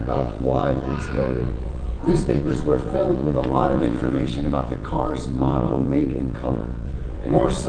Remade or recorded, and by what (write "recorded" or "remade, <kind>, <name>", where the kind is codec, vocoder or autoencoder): remade, vocoder, Vocos